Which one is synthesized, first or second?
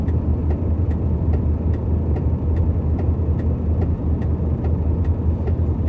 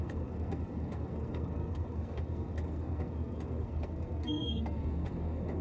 second